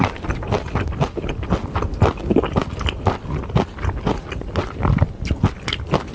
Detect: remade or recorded recorded